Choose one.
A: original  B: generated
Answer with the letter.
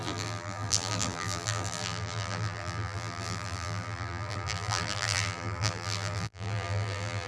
B